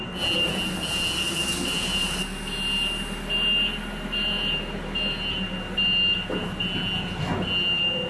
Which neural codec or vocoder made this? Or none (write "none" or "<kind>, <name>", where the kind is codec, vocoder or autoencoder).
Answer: none